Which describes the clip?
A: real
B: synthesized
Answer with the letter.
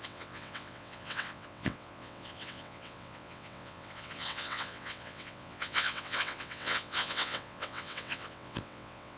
B